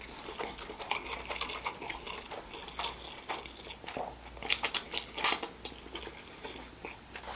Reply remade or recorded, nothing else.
recorded